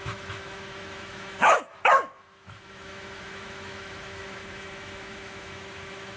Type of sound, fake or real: fake